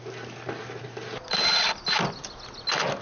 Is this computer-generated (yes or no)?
no